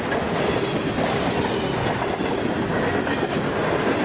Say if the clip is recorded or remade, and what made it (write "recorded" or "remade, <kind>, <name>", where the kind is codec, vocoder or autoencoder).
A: recorded